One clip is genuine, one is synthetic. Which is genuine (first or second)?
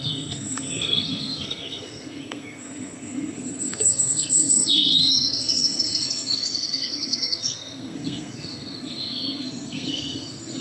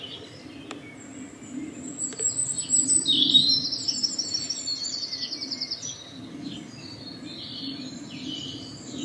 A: second